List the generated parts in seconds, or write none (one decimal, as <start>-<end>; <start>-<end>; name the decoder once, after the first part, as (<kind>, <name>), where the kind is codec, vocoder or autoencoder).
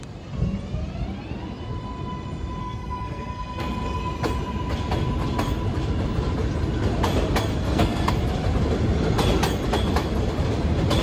2.6-4.0 (codec, SNAC); 7.5-8.1